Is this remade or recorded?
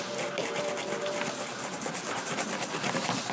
recorded